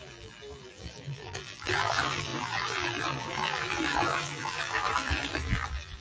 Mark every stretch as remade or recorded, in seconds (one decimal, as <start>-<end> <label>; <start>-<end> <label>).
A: 0.0-6.0 remade